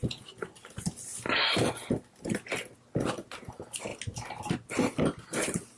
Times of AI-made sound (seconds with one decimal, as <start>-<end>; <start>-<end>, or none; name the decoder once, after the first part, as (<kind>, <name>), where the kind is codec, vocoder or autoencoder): none